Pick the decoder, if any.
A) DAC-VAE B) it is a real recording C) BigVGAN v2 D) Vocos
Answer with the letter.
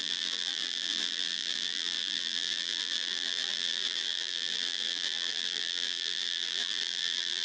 C